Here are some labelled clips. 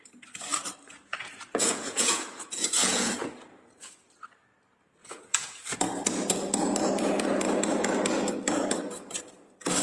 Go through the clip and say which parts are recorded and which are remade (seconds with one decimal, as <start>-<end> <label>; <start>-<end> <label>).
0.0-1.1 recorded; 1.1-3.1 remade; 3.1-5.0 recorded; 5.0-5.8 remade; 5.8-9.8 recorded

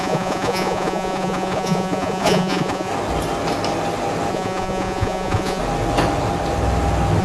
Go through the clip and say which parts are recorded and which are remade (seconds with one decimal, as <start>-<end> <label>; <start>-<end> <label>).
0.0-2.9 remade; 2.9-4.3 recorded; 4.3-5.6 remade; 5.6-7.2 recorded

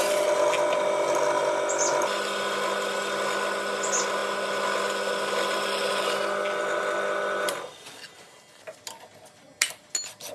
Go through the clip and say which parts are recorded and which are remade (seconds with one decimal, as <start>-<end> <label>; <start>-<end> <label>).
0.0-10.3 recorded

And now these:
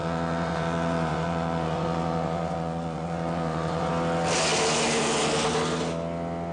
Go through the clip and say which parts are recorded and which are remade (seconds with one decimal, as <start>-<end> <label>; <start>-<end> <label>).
0.0-3.9 remade; 3.9-6.5 recorded